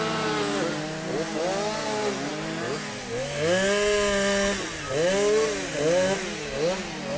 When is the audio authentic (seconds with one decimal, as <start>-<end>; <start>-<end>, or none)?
0.0-7.2